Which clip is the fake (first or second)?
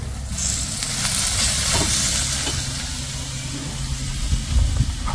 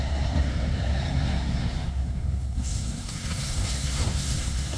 second